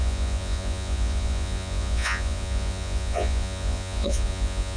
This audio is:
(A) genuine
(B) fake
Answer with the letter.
B